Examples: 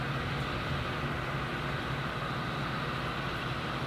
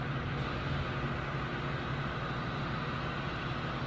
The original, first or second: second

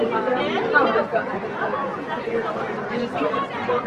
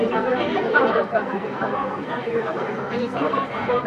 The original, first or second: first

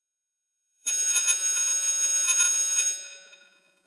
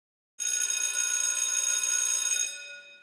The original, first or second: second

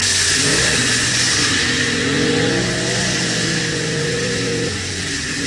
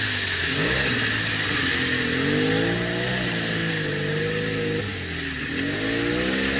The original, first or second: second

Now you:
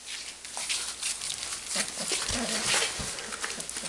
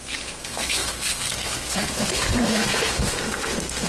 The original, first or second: first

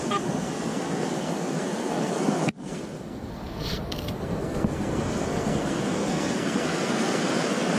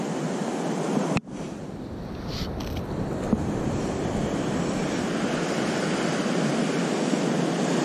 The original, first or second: second